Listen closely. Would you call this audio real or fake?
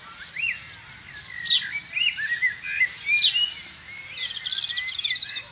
real